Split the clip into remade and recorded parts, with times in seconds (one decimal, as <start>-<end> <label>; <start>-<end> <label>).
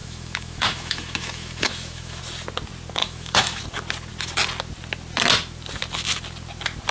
0.0-2.2 remade; 2.2-3.0 recorded; 3.0-3.6 remade; 3.6-6.9 recorded